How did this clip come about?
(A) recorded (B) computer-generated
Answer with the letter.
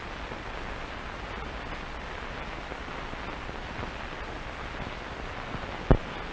A